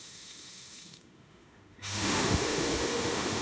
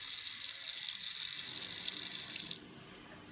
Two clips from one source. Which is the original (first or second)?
second